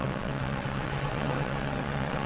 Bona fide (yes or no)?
no